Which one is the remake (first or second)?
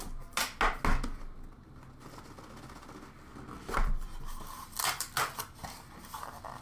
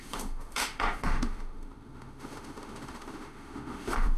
second